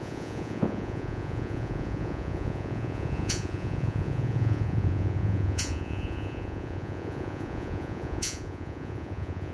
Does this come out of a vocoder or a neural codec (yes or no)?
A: yes